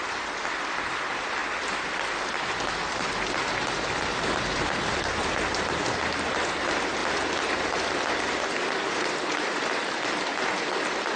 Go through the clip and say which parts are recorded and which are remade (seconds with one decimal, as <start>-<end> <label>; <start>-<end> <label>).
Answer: 0.0-11.2 recorded